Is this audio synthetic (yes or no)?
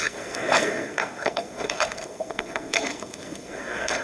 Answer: yes